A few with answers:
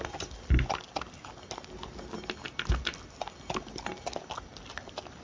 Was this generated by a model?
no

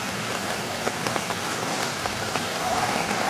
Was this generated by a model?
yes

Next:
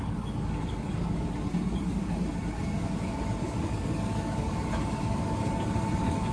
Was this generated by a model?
yes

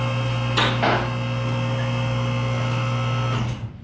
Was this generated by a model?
no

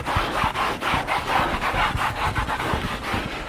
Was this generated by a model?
yes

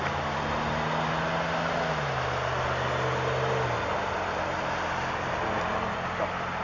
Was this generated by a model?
no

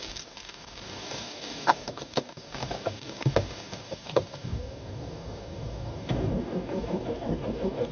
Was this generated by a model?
yes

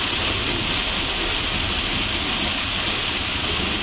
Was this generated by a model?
no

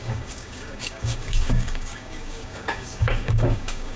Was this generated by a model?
yes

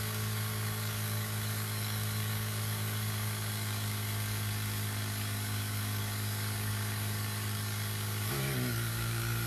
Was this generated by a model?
yes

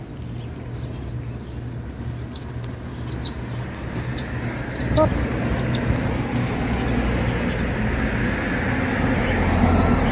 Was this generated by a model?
no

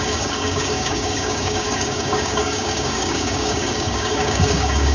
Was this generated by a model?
yes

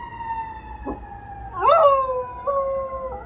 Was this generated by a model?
no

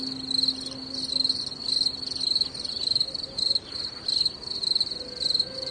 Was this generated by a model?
no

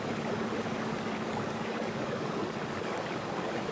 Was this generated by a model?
yes